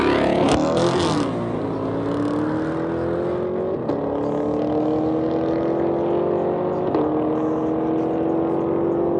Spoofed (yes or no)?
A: no